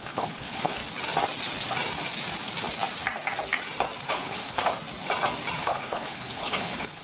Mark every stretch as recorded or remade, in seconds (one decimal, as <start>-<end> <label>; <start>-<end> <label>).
0.0-0.8 remade; 0.8-4.1 recorded; 4.1-4.7 remade; 4.7-5.6 recorded; 5.6-7.0 remade